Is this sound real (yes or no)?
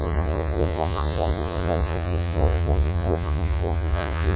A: no